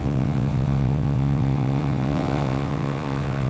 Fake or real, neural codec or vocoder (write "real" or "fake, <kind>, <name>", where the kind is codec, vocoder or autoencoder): fake, vocoder, WaveNeXt